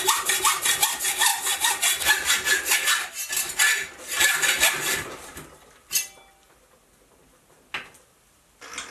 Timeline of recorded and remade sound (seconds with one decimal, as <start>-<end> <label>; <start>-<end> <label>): 0.0-8.9 recorded